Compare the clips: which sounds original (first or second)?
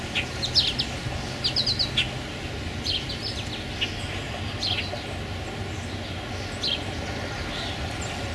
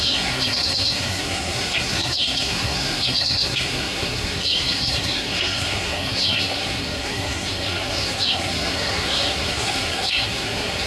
first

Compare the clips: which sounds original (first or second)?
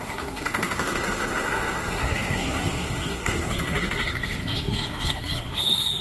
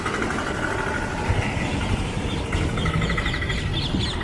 second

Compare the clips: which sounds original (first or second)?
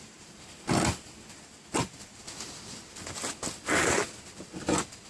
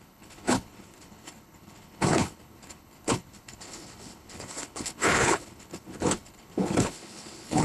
first